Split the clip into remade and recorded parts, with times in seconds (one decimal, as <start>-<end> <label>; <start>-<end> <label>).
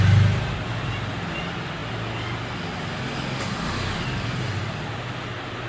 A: 0.0-5.7 recorded